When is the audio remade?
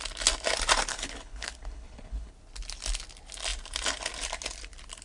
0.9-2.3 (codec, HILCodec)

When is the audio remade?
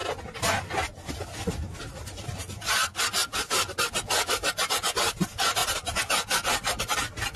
none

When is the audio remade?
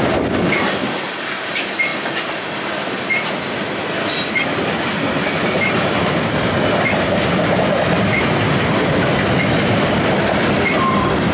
none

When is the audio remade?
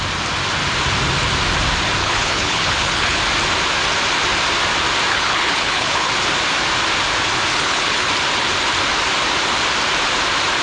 2.0-3.2 (codec, HILCodec); 5.1-6.1; 7.5-8.1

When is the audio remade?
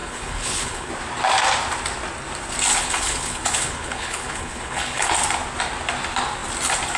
0.0-0.9 (codec, HILCodec); 2.7-5.1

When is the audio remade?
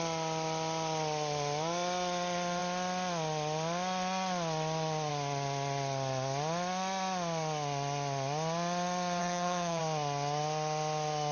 9.2-9.8 (codec, HILCodec)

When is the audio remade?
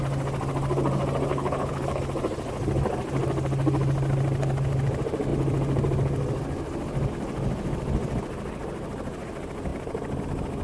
1.3-2.0 (codec, HILCodec)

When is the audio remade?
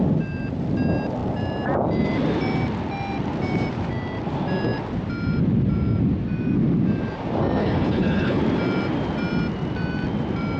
7.6-8.4 (codec, HILCodec)